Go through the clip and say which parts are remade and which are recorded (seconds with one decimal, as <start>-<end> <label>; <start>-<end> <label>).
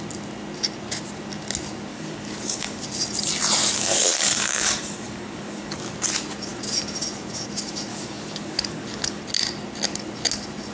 0.0-1.9 recorded; 1.9-2.8 remade; 2.8-3.6 recorded; 3.6-5.9 remade; 5.9-7.9 recorded; 7.9-9.2 remade; 9.2-10.7 recorded